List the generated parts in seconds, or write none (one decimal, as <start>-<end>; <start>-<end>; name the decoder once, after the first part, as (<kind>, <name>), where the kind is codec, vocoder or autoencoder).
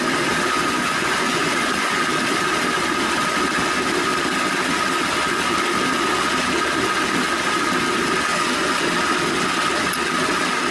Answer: 0.6-2.0 (vocoder, Vocos); 8.3-8.9